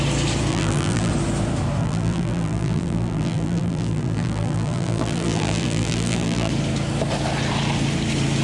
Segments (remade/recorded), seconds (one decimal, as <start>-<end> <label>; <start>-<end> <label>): 0.0-0.5 recorded; 0.5-1.1 remade; 1.1-1.8 recorded; 1.8-6.5 remade; 6.5-8.4 recorded